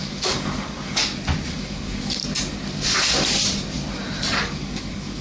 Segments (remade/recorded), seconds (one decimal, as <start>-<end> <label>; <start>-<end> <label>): 0.0-1.0 remade; 1.0-1.5 recorded; 1.5-2.2 remade; 2.2-4.4 recorded; 4.4-5.2 remade